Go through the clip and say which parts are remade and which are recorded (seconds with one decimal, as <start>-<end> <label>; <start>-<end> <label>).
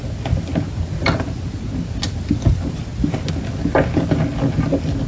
0.0-5.1 recorded